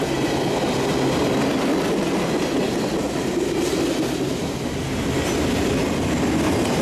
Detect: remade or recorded recorded